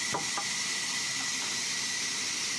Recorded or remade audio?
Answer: remade